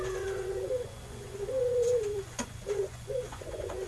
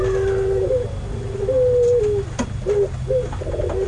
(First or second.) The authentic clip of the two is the second